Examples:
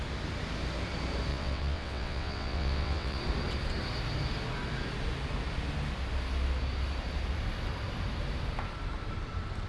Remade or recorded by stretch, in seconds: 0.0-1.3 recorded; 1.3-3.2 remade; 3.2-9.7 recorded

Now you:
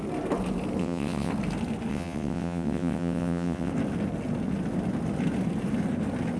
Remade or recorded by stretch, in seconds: 0.0-0.8 recorded; 0.8-1.3 remade; 1.3-1.9 recorded; 1.9-3.7 remade; 3.7-6.4 recorded

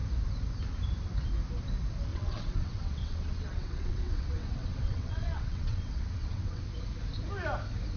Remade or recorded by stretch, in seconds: 0.0-2.1 recorded; 2.1-6.6 remade; 6.6-8.0 recorded

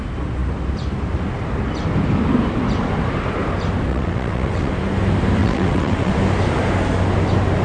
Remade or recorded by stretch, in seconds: 0.0-3.9 recorded; 3.9-4.7 remade; 4.7-5.4 recorded; 5.4-6.1 remade; 6.1-7.6 recorded

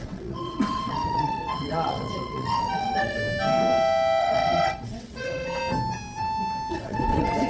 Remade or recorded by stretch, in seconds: 0.0-3.2 remade; 3.2-4.2 recorded; 4.2-5.6 remade; 5.6-6.7 recorded; 6.7-7.5 remade

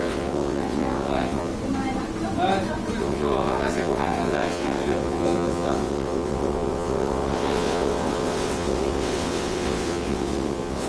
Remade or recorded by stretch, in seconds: 0.0-1.5 remade; 1.5-3.0 recorded; 3.0-10.9 remade

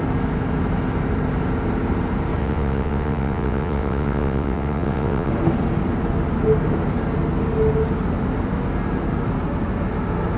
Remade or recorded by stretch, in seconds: 0.0-2.4 recorded; 2.4-5.3 remade; 5.3-10.4 recorded

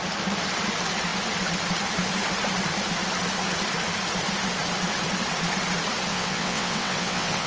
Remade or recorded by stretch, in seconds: 0.0-6.1 recorded; 6.1-7.5 remade